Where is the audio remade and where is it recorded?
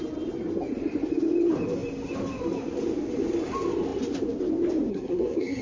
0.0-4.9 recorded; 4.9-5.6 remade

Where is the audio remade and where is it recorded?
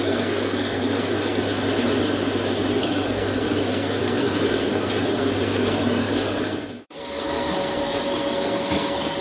0.0-1.5 remade; 1.5-2.7 recorded; 2.7-9.2 remade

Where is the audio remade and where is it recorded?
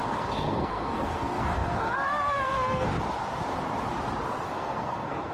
0.0-2.9 remade; 2.9-4.5 recorded; 4.5-5.3 remade